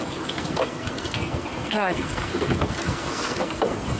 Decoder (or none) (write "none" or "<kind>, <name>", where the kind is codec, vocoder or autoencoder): codec, SNAC